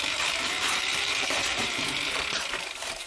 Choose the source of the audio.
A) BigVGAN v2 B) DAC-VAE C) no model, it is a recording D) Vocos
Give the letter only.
A